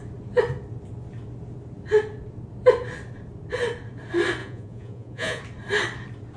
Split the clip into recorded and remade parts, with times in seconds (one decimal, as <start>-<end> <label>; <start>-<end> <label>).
0.0-4.4 recorded; 4.4-5.4 remade; 5.4-6.4 recorded